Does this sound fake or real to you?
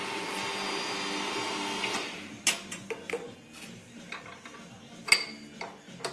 real